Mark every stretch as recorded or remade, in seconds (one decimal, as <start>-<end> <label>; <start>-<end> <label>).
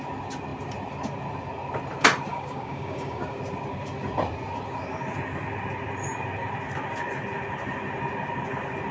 0.0-2.3 recorded; 2.3-3.4 remade; 3.4-8.9 recorded